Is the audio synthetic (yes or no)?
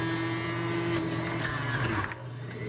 no